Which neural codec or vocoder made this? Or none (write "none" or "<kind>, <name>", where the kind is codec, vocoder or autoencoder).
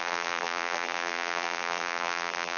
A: vocoder, BigVGAN v2